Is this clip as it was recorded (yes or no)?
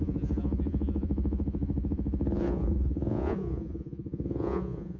no